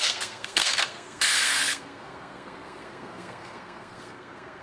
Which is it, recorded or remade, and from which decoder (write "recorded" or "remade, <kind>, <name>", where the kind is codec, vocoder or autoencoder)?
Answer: remade, codec, SNAC